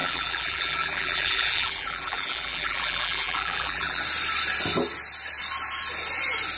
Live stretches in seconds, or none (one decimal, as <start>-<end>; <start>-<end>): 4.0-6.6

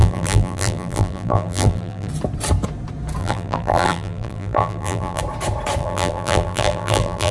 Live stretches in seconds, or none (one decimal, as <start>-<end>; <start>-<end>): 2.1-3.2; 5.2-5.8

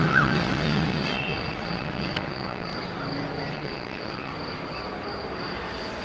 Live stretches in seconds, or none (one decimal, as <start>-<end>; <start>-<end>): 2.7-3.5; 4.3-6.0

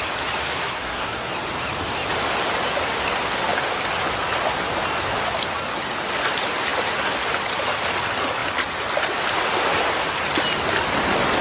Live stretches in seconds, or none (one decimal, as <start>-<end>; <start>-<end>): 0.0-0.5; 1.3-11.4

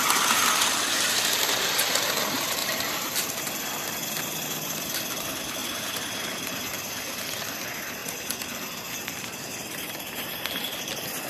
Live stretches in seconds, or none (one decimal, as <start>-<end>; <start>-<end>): 0.0-2.6; 5.0-5.6; 7.0-8.0; 10.8-11.3

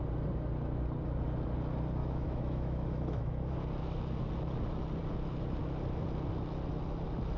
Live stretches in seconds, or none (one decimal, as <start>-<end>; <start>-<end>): 0.0-2.0; 3.6-7.4

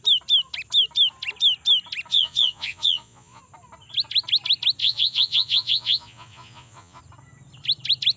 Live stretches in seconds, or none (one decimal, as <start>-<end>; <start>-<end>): 0.0-2.1; 3.4-4.8; 7.0-8.2